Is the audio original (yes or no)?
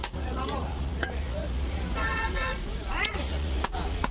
no